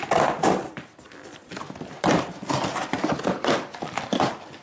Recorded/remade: remade